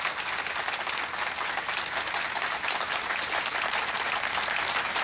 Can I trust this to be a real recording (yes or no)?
yes